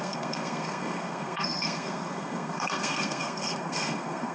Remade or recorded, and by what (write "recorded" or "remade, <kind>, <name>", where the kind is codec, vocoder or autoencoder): remade, codec, SNAC